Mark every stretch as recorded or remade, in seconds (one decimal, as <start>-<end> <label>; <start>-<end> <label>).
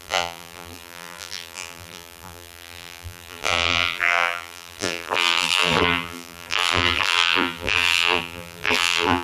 0.0-9.2 remade